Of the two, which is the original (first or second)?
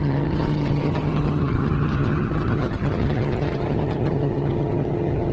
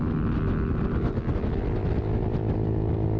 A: second